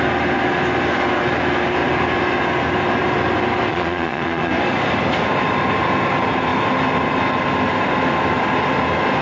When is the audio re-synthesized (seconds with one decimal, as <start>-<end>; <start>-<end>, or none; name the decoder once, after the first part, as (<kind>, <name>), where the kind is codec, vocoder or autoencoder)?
3.7-4.5 (vocoder, Vocos)